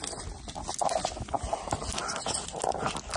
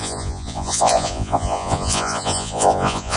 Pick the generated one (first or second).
second